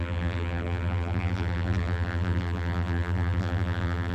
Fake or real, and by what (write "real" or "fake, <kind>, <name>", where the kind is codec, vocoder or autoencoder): fake, vocoder, BigVGAN v2